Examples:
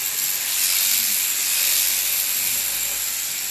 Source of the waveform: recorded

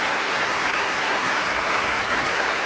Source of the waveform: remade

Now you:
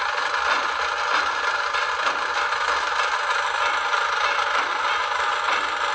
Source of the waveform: recorded